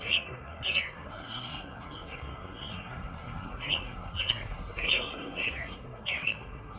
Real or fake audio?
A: fake